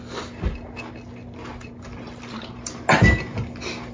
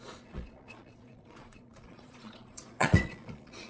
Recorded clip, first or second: first